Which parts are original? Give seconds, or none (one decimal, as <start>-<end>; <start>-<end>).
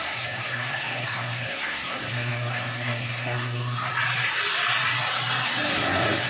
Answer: 3.9-5.7